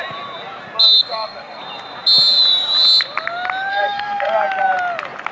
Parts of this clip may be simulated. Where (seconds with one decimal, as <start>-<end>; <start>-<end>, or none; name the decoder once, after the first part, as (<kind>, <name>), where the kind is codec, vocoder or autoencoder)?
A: 1.1-1.6 (codec, SNAC); 3.7-4.3